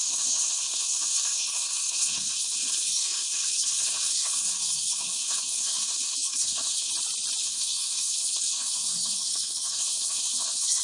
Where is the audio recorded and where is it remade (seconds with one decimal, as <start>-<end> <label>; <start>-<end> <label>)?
0.0-6.9 remade; 6.9-7.4 recorded; 7.4-10.8 remade